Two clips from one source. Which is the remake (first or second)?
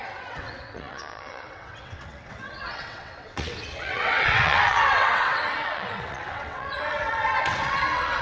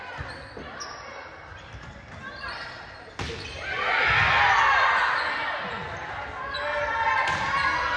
first